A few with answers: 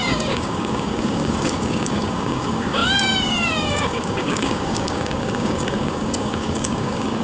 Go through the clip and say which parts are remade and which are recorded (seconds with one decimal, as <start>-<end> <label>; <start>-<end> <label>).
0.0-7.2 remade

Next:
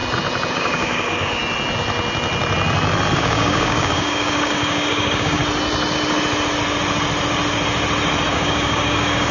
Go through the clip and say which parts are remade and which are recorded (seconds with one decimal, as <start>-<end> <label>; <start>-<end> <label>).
0.0-0.5 recorded; 0.5-1.4 remade; 1.4-3.2 recorded; 3.2-5.4 remade; 5.4-8.3 recorded; 8.3-9.3 remade

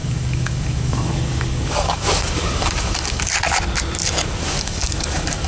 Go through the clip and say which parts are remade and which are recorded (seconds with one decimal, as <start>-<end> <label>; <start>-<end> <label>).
0.0-3.3 remade; 3.3-4.0 recorded; 4.0-5.5 remade

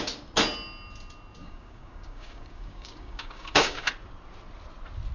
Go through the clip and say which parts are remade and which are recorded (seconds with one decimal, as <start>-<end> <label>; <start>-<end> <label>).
0.0-1.4 recorded; 1.4-3.9 remade; 3.9-5.1 recorded

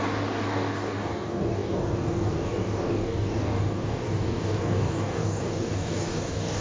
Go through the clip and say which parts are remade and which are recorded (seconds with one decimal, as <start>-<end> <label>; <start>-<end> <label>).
0.0-6.6 remade

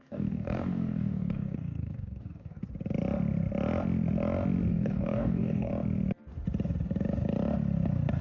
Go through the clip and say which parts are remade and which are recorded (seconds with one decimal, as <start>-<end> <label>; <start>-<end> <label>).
0.0-2.6 remade; 2.6-4.7 recorded; 4.7-5.7 remade; 5.7-8.2 recorded

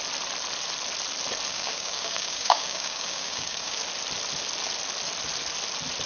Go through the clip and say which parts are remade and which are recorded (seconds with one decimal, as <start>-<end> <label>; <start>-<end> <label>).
0.0-1.5 recorded; 1.5-3.8 remade; 3.8-6.1 recorded